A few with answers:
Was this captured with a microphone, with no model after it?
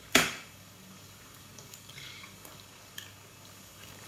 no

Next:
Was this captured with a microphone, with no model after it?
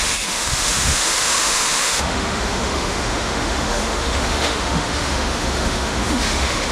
no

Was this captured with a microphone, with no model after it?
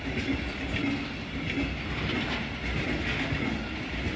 yes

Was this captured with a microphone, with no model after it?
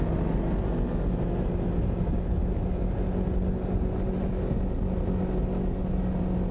yes